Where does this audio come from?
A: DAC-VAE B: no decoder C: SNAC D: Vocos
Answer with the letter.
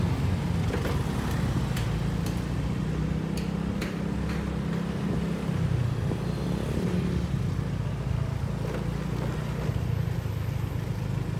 B